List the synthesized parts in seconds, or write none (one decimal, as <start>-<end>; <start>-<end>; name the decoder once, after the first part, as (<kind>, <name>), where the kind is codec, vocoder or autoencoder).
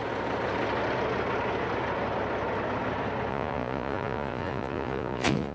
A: 3.3-5.5 (vocoder, Vocos)